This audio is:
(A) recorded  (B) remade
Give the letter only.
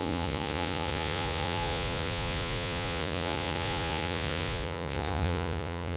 B